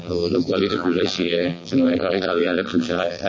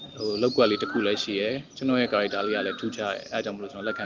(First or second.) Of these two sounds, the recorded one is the second